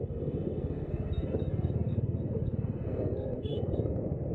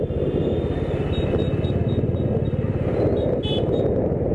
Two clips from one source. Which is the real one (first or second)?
second